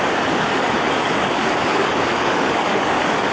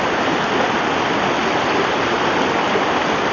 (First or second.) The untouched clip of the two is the second